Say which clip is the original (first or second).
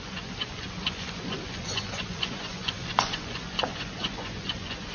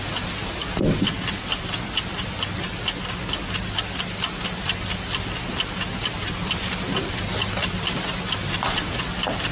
second